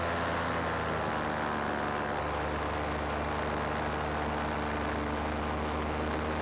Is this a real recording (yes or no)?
yes